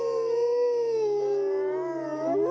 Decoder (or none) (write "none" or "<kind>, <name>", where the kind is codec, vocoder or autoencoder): none